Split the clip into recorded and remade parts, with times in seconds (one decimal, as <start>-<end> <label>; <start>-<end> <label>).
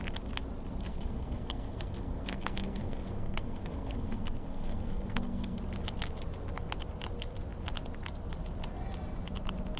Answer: 0.0-0.9 recorded; 0.9-5.6 remade; 5.6-9.8 recorded